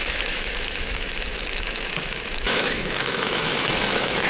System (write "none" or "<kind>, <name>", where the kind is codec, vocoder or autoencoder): autoencoder, DAC-VAE